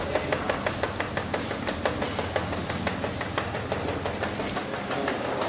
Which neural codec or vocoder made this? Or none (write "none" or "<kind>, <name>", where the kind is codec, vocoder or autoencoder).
none